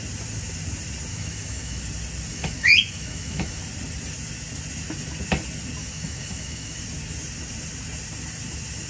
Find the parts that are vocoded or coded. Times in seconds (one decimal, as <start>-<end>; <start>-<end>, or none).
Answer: 1.1-1.8; 2.3-3.6; 5.8-6.8

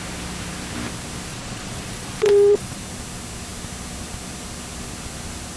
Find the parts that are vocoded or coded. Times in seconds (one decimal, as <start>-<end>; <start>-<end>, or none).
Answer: 1.3-2.8

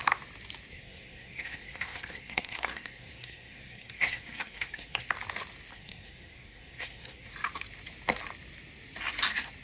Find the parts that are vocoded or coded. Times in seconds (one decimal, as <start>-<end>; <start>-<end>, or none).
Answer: 0.7-5.1; 5.7-7.3

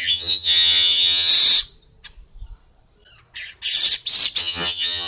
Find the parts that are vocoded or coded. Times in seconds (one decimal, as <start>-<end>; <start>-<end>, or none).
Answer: 0.0-1.3; 4.4-5.1

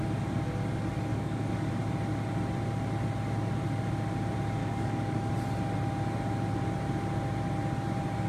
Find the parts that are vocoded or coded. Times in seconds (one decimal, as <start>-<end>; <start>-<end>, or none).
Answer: 1.1-1.7; 4.6-5.3